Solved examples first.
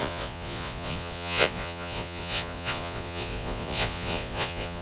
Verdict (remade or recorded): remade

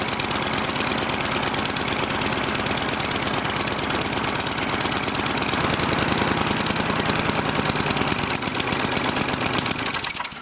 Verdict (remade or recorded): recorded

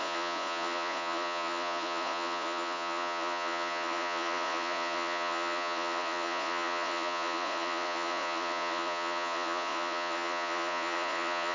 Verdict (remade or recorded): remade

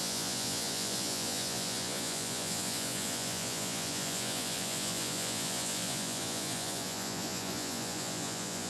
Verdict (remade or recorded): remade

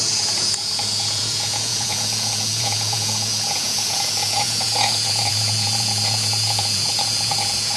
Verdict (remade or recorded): remade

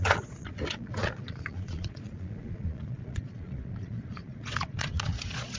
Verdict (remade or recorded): remade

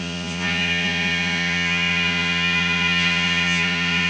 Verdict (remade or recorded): remade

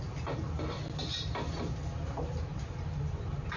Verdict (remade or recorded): recorded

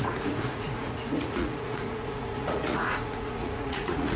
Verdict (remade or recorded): remade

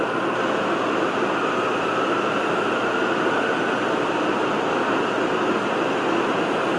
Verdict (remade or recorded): recorded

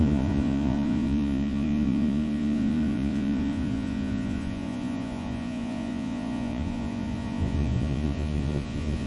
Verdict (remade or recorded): remade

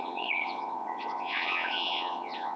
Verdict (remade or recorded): remade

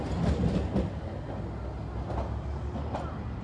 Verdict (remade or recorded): recorded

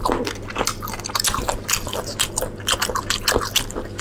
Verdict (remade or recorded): recorded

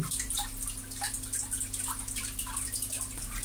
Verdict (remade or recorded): recorded